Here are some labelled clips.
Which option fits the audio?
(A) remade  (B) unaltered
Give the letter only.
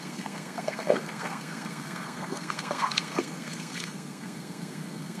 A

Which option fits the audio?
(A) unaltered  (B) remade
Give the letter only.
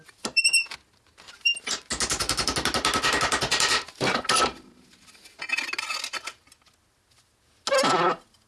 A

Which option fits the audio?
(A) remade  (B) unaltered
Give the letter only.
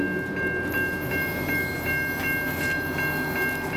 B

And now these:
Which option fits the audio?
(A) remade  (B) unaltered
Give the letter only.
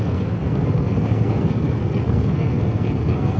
A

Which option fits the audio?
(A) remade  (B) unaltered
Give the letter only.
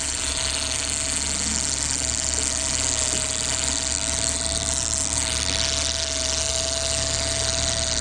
B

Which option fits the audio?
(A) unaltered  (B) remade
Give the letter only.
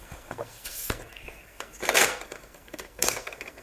B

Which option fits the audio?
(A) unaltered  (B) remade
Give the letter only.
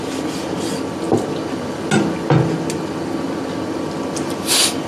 A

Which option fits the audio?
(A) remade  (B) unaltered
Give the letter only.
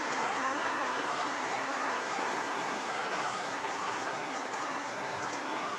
A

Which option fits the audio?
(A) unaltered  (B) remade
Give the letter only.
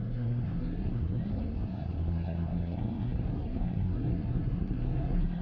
B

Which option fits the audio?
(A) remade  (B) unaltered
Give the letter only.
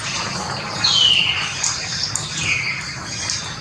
B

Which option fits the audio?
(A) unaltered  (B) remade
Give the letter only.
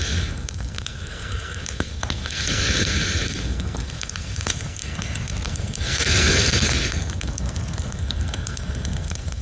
B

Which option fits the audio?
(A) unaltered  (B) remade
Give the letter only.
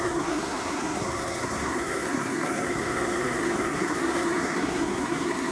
B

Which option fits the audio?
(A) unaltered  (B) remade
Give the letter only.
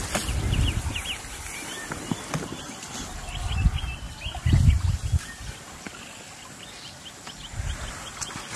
A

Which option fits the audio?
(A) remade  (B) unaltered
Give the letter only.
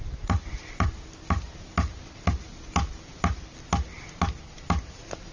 B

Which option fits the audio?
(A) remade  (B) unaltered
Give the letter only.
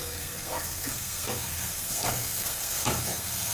A